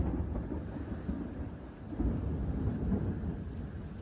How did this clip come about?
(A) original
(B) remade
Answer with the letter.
A